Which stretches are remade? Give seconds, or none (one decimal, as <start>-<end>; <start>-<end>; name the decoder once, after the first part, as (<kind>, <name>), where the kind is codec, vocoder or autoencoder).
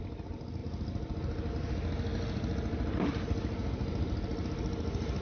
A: none